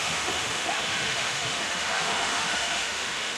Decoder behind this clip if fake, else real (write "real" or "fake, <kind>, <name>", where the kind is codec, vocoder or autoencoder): fake, autoencoder, DAC-VAE